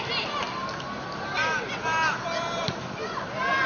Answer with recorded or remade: recorded